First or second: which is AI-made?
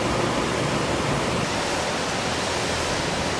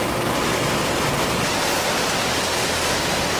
first